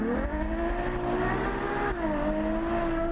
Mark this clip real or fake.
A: real